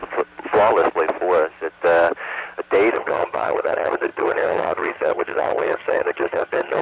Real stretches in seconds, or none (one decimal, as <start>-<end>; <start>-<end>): 0.0-2.9